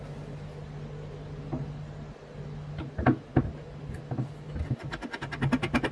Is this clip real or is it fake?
real